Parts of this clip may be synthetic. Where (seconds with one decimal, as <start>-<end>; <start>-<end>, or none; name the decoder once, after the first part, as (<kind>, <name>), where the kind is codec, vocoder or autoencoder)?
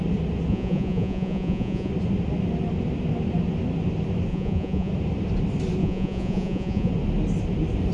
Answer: 0.5-1.9 (vocoder, Vocos); 4.3-4.9; 5.8-6.9